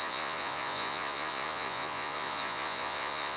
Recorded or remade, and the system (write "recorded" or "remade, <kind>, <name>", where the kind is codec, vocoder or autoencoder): remade, vocoder, Vocos